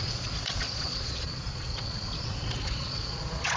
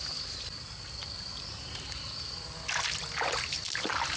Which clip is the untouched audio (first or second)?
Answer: second